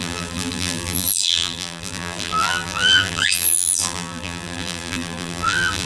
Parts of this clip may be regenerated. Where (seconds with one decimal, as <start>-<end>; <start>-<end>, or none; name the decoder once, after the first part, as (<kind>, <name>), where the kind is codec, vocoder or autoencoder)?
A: 0.0-5.9 (vocoder, BigVGAN v2)